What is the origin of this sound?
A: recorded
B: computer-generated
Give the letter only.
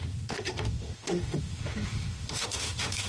B